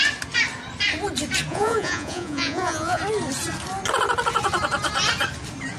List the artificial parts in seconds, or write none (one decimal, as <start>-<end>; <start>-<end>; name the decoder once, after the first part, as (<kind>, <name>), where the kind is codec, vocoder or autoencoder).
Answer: 1.5-3.0 (vocoder, Vocos)